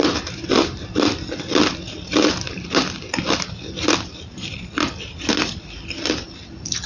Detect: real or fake real